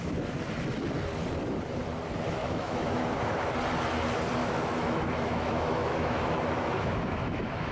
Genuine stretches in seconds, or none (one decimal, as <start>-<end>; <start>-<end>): 0.0-2.4; 3.5-4.4